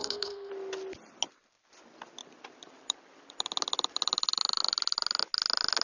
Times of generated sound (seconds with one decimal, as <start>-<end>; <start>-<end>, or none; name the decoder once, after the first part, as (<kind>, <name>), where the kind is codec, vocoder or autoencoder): 0.0-0.5 (codec, SNAC)